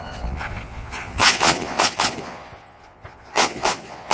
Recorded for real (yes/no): no